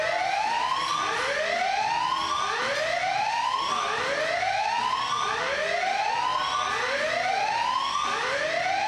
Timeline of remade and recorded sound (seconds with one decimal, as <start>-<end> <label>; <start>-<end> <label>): 0.0-8.9 recorded